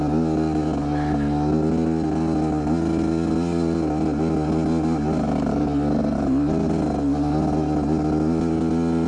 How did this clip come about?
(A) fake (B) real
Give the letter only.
B